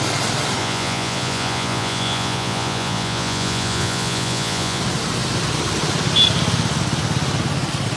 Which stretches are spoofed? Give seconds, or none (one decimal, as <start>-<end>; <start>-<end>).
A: 0.6-4.8